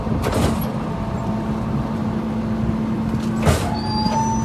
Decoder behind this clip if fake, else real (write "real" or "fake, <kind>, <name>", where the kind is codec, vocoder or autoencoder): real